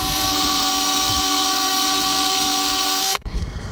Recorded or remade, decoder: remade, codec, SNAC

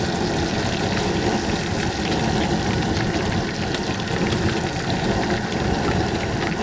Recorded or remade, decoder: recorded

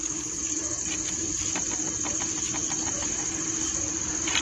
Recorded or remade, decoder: remade, vocoder, BigVGAN v2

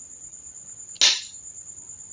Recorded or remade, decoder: recorded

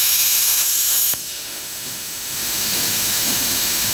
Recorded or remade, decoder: remade, autoencoder, DAC-VAE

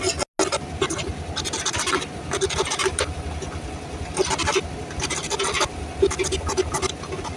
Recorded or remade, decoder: recorded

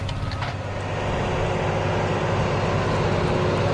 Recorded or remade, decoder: recorded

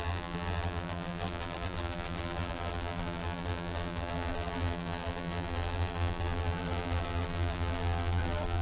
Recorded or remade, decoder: remade, vocoder, BigVGAN v2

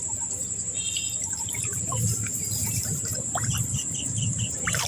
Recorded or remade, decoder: remade, vocoder, BigVGAN v2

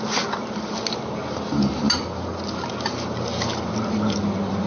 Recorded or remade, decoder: recorded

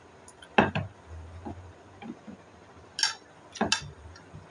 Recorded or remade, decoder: recorded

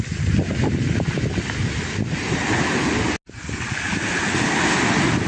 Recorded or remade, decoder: recorded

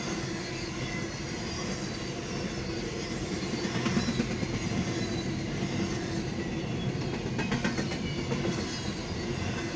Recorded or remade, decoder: recorded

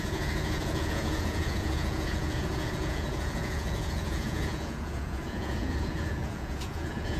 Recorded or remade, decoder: remade, vocoder, Vocos